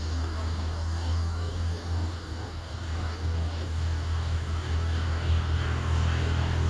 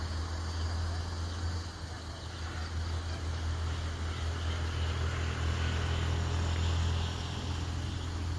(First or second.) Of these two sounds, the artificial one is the first